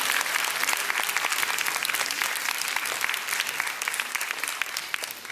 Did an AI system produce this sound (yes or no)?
no